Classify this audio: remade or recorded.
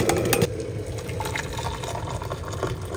recorded